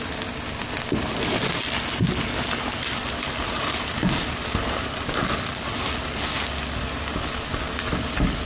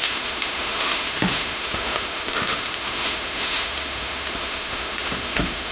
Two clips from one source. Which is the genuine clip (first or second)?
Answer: first